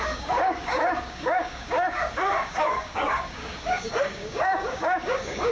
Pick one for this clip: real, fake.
fake